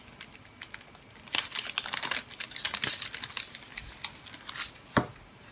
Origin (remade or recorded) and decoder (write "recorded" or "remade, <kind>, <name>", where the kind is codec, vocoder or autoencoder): recorded